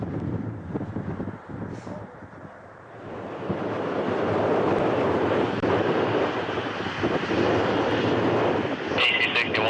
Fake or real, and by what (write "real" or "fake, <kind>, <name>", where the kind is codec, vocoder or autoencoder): real